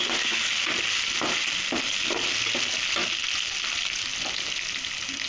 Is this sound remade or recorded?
recorded